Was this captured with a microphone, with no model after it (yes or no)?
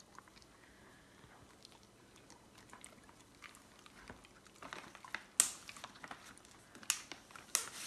yes